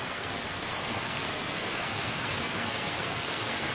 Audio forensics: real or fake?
fake